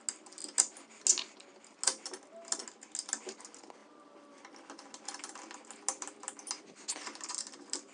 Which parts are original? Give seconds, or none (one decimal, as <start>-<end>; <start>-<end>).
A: 0.0-7.9